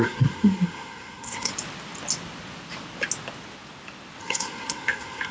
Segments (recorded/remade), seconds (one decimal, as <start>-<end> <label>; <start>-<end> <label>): 0.0-1.5 remade; 1.5-4.2 recorded; 4.2-5.3 remade